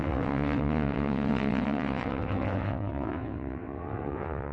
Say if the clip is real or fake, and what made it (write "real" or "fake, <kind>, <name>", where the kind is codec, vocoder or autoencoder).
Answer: fake, vocoder, WaveNeXt